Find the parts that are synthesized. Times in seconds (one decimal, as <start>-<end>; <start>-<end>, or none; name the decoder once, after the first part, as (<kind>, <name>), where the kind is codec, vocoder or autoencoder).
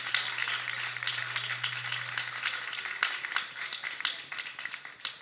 none